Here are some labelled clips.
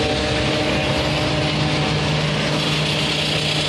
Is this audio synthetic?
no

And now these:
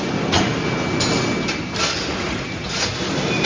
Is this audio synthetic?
no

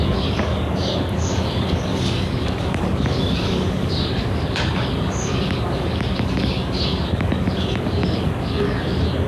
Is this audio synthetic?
yes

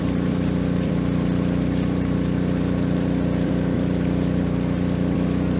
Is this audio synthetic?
no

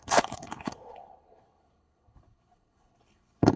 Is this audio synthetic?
yes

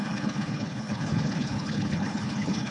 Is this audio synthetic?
yes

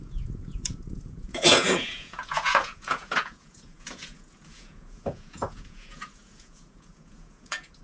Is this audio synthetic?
yes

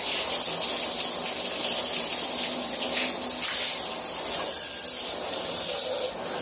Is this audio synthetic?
no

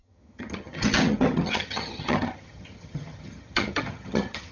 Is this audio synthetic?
yes